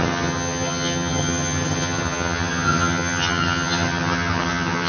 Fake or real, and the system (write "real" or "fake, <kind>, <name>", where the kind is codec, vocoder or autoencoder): fake, vocoder, HiFi-GAN